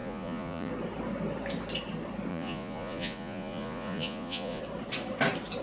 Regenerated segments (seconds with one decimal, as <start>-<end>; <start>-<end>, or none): 0.0-0.7; 2.3-4.6